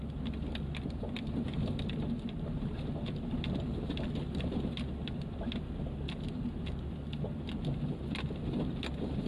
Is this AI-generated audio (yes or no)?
no